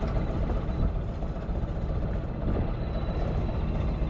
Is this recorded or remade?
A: recorded